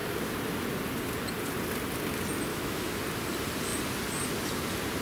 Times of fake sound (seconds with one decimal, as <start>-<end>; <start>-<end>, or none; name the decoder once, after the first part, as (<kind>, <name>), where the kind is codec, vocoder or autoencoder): 2.5-3.0 (autoencoder, DAC-VAE)